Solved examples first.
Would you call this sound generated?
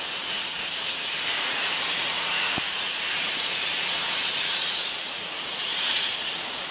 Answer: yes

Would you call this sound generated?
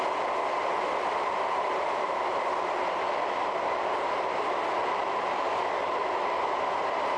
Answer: no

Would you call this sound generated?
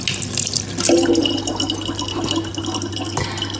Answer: no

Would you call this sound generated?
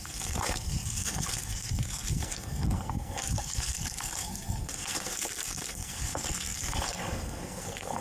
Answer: yes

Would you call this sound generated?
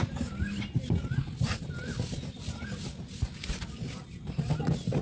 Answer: no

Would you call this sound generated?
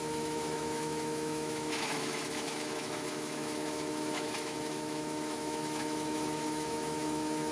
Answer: yes